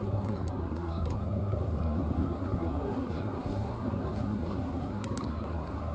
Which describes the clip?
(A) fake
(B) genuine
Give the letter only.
A